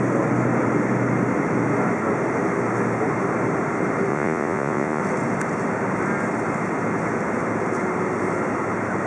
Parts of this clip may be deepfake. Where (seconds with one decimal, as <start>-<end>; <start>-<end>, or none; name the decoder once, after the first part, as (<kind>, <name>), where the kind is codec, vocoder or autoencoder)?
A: 4.1-5.0 (vocoder, Vocos)